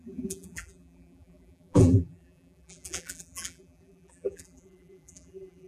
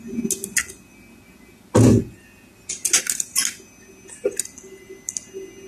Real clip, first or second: second